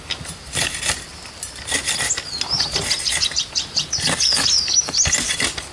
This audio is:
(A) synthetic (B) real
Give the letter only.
B